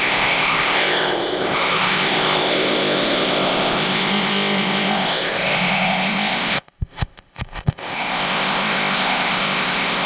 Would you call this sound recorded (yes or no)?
no